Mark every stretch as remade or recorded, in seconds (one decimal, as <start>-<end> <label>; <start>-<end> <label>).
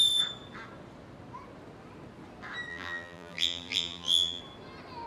0.0-2.7 recorded; 2.7-4.4 remade; 4.4-5.1 recorded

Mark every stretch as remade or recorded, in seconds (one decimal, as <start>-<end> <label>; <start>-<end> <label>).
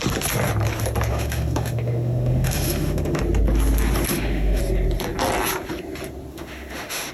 0.0-1.1 recorded; 1.1-3.2 remade; 3.2-4.1 recorded; 4.1-4.6 remade; 4.6-6.3 recorded; 6.3-7.1 remade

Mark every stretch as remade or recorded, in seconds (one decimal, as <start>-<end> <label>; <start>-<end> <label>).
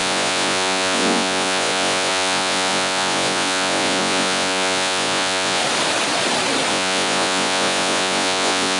0.0-5.6 remade; 5.6-6.7 recorded; 6.7-8.8 remade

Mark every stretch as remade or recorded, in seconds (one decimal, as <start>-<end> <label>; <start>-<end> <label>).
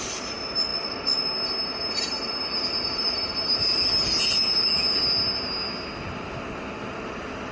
0.0-7.5 recorded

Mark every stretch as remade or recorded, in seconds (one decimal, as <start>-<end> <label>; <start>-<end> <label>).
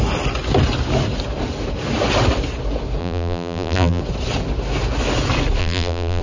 0.0-3.0 recorded; 3.0-4.0 remade; 4.0-5.6 recorded; 5.6-6.2 remade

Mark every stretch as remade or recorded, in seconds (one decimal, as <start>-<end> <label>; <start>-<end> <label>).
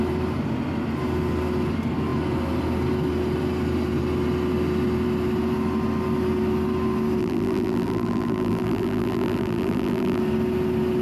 0.0-7.2 recorded; 7.2-10.2 remade; 10.2-11.0 recorded